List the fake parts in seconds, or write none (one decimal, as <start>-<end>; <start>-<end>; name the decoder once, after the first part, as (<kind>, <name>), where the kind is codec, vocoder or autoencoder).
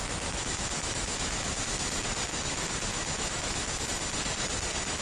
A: 0.0-1.6 (autoencoder, DAC-VAE); 2.3-3.8